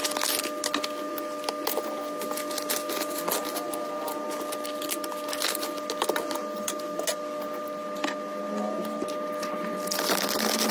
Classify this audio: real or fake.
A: real